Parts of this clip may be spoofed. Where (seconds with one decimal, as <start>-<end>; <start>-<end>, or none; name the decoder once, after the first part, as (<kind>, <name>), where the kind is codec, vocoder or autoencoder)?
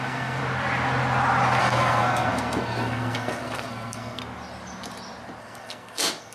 0.0-0.4 (codec, SNAC); 1.6-4.2; 5.4-6.3